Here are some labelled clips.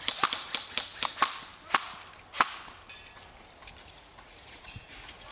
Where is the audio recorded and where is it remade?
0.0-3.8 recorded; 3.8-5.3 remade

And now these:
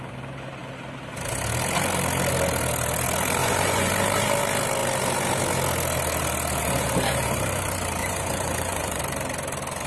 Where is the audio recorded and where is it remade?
0.0-3.4 recorded; 3.4-3.9 remade; 3.9-8.0 recorded; 8.0-9.0 remade; 9.0-9.9 recorded